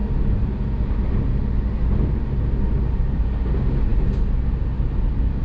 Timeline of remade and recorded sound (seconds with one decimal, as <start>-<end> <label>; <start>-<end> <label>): 0.0-5.4 recorded